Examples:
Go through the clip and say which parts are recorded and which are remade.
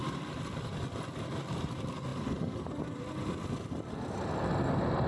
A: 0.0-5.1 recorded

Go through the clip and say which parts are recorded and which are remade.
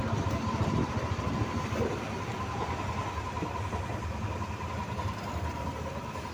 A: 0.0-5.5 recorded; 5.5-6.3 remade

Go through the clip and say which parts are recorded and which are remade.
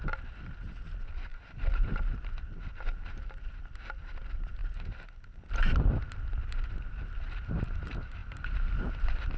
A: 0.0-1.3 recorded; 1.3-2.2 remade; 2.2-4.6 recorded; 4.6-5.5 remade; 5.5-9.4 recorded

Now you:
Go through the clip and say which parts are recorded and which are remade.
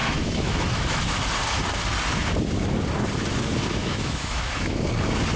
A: 0.0-1.0 remade; 1.0-3.8 recorded; 3.8-4.9 remade; 4.9-5.4 recorded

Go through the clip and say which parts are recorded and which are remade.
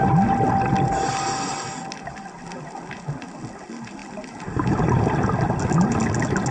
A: 0.0-4.0 recorded; 4.0-5.1 remade; 5.1-6.5 recorded